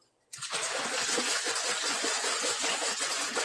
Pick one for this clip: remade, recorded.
remade